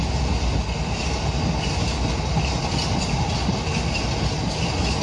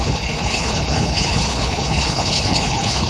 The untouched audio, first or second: first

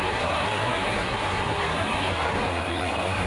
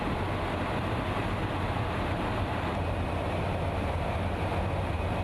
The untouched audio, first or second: second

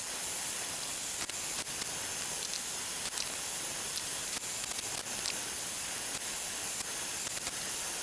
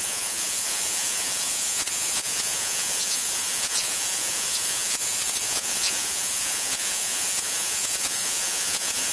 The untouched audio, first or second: first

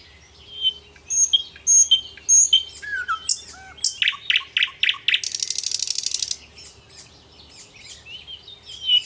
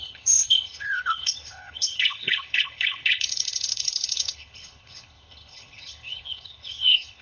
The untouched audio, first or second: first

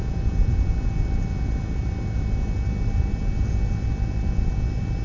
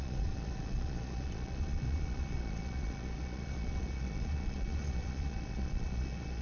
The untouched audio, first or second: first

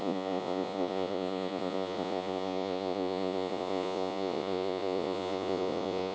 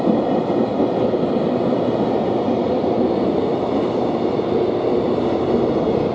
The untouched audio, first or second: second